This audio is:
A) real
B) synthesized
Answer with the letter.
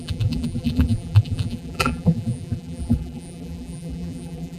B